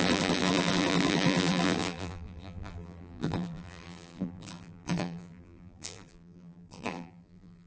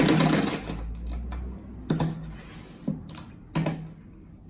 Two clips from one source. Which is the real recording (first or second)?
second